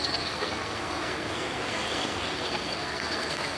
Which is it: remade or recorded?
remade